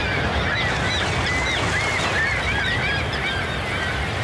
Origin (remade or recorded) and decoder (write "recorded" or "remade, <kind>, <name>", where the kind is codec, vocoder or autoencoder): recorded